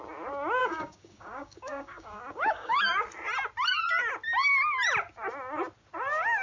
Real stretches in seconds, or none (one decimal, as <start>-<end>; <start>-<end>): 0.0-0.6; 2.8-6.4